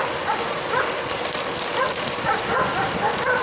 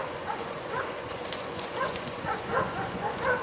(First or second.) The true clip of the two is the first